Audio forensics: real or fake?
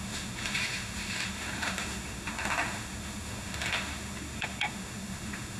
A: fake